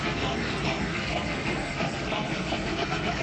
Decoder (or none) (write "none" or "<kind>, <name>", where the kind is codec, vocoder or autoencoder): codec, SNAC